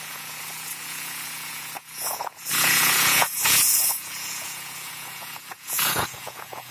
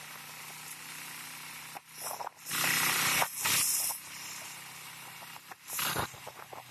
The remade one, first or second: first